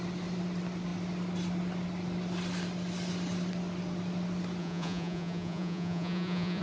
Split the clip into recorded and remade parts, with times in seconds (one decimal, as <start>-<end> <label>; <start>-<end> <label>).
0.0-4.6 recorded; 4.6-6.6 remade